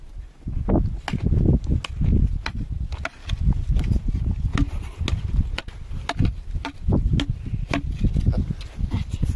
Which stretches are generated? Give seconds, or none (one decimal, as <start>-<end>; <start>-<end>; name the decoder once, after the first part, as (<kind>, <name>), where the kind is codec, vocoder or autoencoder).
none